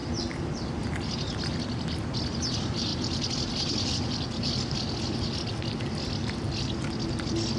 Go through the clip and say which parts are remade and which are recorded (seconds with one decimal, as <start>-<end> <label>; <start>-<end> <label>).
0.0-7.6 recorded